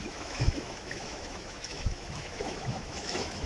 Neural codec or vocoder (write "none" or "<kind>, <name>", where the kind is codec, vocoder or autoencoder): autoencoder, DAC-VAE